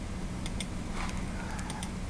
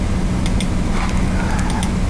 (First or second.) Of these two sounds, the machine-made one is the first